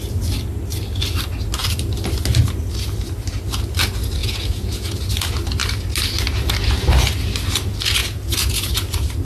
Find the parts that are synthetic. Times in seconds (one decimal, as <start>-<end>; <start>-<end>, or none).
4.2-4.9; 8.0-8.7